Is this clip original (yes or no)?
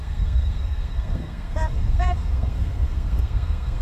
no